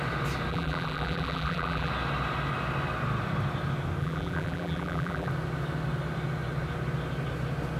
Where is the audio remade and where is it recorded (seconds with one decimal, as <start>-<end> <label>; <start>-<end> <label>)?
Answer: 0.0-0.5 recorded; 0.5-1.9 remade; 1.9-4.0 recorded; 4.0-5.3 remade; 5.3-7.8 recorded